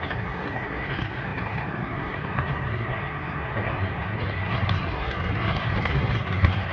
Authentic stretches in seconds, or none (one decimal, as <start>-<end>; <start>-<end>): none